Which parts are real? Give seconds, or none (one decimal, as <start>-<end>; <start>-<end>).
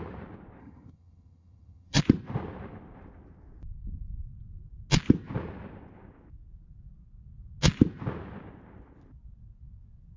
0.0-0.6; 2.0-10.2